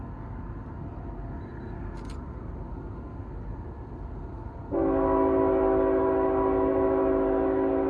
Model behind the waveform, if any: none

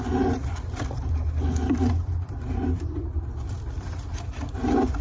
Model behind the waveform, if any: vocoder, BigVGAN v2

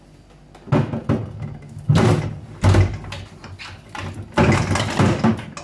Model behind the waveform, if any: none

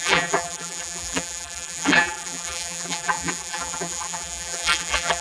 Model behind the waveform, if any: vocoder, BigVGAN v2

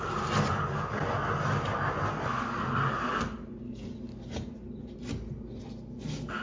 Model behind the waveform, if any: none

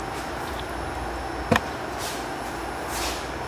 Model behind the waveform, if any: none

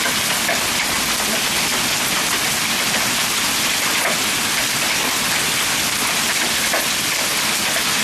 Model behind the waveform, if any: none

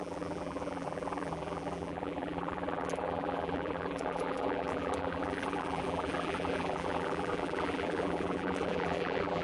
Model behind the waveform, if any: vocoder, BigVGAN v2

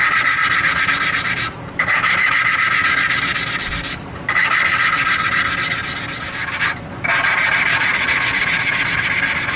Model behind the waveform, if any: none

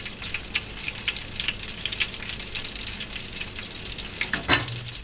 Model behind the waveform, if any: none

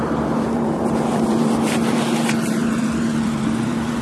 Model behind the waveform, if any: vocoder, BigVGAN v2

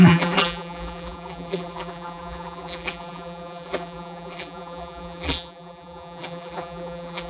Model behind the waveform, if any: vocoder, BigVGAN v2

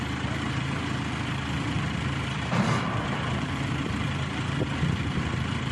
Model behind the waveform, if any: vocoder, BigVGAN v2